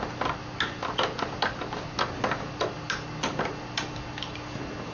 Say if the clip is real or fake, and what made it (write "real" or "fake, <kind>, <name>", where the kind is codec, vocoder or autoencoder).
real